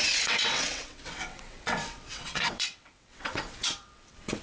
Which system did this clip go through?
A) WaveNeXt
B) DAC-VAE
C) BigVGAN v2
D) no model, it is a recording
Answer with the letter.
A